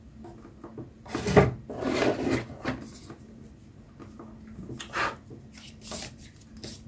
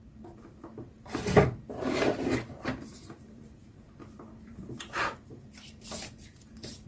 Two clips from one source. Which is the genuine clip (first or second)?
first